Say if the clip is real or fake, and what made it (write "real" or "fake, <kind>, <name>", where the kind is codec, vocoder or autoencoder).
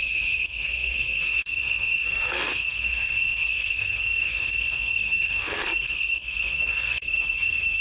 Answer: fake, codec, SNAC